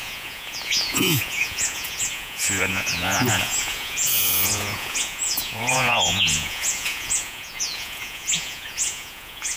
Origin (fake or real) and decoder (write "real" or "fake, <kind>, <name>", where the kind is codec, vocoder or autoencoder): fake, vocoder, Vocos